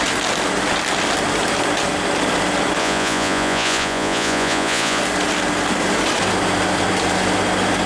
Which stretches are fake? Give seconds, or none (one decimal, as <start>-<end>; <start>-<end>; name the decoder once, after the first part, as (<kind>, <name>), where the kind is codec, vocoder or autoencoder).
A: 2.8-5.0 (vocoder, Vocos)